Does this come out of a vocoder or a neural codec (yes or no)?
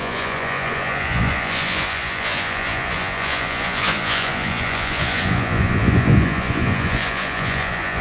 yes